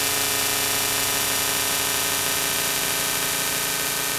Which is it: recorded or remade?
recorded